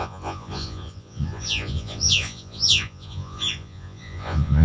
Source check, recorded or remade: remade